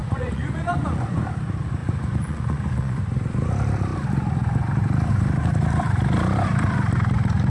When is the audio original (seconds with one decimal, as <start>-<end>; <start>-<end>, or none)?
1.2-1.8; 3.0-7.5